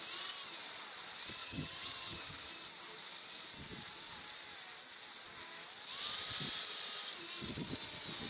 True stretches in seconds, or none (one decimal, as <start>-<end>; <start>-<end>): 0.0-1.4; 2.5-8.3